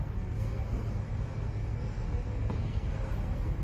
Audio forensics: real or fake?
fake